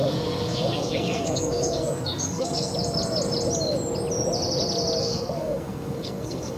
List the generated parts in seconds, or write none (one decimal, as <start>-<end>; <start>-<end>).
0.0-2.7; 5.0-6.6